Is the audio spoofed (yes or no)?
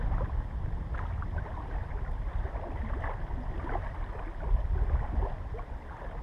no